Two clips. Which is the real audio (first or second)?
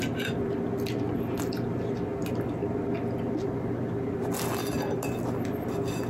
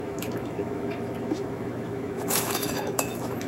first